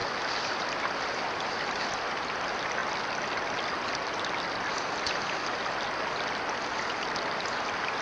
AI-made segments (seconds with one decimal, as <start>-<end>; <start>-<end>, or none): none